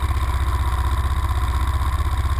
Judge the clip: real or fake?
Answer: real